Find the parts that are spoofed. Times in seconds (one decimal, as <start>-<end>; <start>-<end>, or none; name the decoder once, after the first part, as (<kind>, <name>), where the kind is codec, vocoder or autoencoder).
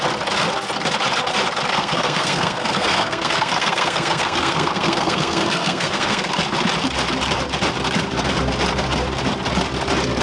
1.7-6.3 (codec, SNAC)